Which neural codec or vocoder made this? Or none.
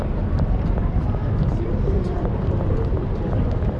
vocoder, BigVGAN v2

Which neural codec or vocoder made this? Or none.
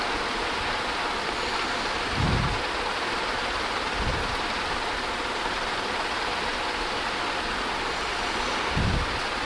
none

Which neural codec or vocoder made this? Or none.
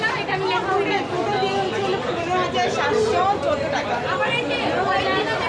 none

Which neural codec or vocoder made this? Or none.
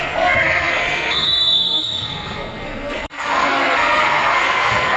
codec, SNAC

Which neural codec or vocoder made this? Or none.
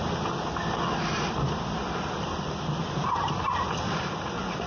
none